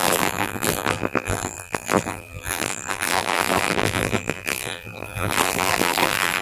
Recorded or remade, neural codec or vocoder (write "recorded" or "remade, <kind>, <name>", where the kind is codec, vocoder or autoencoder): remade, vocoder, BigVGAN v2